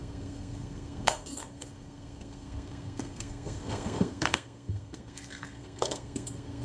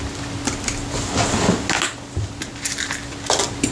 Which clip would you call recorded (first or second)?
second